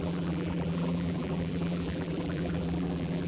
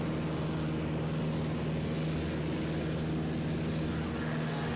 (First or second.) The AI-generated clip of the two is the first